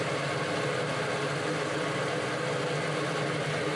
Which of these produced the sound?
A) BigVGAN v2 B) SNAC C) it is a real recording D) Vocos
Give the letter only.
C